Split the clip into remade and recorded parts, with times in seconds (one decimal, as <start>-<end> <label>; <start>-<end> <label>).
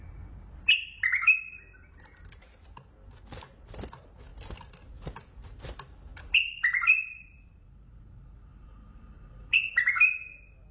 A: 0.0-4.3 recorded; 4.3-5.4 remade; 5.4-6.1 recorded; 6.1-8.0 remade; 8.0-8.5 recorded; 8.5-9.7 remade; 9.7-10.7 recorded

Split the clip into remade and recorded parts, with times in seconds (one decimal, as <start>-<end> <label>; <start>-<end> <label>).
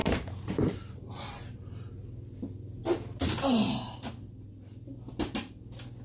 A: 0.0-1.9 remade; 1.9-6.0 recorded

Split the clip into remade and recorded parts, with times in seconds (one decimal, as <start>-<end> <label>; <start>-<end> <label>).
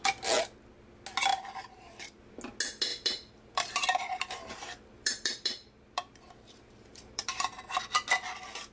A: 0.0-1.3 recorded; 1.3-2.2 remade; 2.2-2.9 recorded; 2.9-7.8 remade; 7.8-8.7 recorded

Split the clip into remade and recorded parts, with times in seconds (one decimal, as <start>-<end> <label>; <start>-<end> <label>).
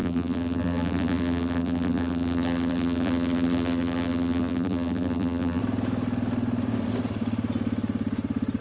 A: 0.0-5.6 remade; 5.6-8.6 recorded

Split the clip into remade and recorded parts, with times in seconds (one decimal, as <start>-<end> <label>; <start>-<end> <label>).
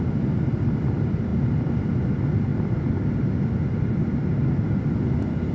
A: 0.0-5.5 recorded